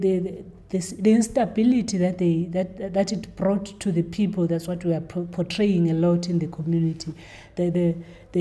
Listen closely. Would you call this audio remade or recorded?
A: recorded